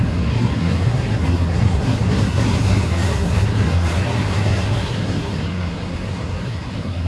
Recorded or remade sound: remade